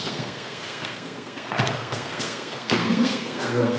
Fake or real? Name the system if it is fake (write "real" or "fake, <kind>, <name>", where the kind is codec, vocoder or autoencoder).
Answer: fake, codec, SNAC